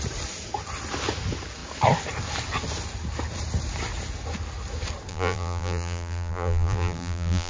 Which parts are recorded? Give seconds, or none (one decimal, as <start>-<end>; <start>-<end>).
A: 0.0-5.1